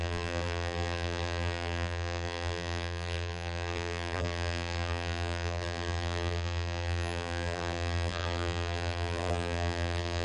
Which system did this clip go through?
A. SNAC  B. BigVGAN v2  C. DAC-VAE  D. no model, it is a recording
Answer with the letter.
B